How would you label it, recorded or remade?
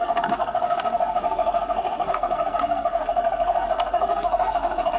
remade